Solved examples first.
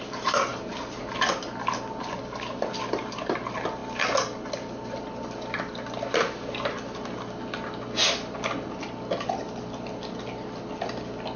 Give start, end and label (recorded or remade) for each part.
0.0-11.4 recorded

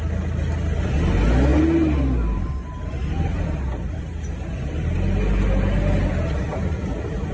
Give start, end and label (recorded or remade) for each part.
0.0-7.3 recorded